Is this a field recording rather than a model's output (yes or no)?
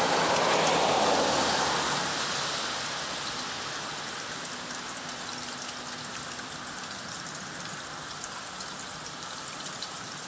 yes